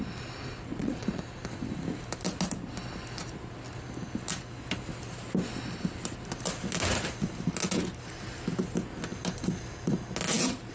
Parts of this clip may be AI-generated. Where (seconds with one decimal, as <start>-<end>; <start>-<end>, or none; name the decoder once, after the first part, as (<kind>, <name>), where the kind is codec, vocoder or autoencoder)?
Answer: 0.7-1.2 (vocoder, Vocos)

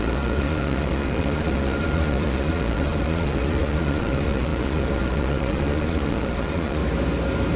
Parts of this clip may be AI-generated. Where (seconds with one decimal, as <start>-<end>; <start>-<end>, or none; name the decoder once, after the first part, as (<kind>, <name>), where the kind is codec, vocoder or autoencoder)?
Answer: 0.0-6.8 (vocoder, Vocos)

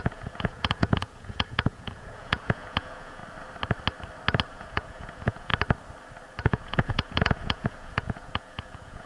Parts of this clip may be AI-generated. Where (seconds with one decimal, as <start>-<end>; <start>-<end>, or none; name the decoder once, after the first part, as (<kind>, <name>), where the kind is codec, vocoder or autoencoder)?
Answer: 0.0-3.2 (vocoder, Vocos); 4.5-5.5; 6.4-9.1

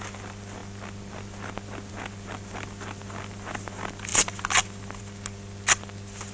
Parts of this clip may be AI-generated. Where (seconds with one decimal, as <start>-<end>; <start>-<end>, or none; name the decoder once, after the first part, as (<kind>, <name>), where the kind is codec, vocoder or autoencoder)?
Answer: none

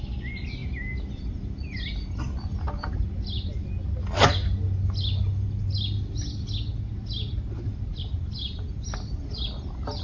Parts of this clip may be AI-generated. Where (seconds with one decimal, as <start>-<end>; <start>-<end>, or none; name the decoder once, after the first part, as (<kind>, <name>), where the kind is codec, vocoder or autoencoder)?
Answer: none

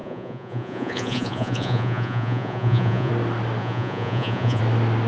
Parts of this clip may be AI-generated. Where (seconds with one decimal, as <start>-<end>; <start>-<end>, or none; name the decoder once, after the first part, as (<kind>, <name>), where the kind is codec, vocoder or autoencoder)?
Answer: 0.0-3.1 (vocoder, Vocos); 3.6-4.6

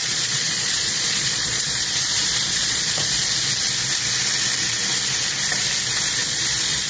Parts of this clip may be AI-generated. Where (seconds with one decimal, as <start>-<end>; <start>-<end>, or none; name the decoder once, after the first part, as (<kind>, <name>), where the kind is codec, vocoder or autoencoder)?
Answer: 0.0-3.3 (vocoder, Vocos); 6.2-6.9